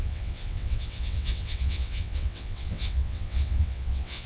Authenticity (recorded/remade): remade